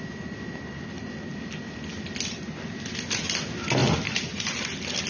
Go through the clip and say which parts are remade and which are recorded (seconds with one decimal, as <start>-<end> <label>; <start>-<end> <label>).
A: 0.0-5.1 recorded